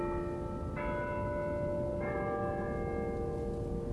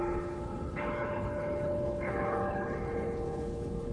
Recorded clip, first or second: first